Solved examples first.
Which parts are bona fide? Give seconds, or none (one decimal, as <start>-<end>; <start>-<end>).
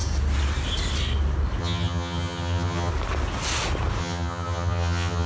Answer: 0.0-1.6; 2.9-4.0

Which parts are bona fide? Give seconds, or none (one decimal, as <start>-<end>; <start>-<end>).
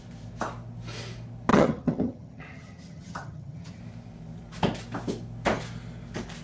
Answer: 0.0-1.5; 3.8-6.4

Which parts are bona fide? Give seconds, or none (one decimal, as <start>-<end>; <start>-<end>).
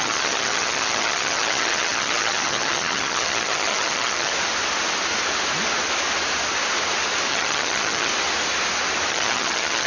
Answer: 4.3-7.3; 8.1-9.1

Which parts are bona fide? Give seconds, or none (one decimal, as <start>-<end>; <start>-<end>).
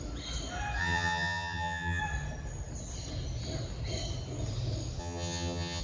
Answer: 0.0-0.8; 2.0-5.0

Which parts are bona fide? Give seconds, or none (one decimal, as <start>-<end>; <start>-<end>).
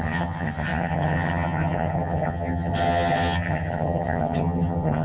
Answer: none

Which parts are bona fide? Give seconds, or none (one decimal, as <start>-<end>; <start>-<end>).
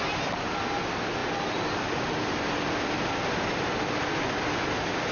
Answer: 0.0-5.1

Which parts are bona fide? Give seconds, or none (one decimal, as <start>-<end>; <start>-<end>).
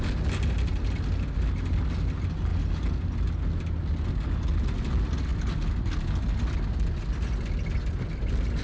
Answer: 0.0-8.6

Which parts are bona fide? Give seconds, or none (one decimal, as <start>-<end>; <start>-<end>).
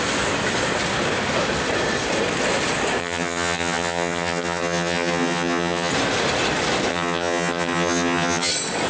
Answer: 0.0-3.0; 5.9-6.9; 8.5-8.9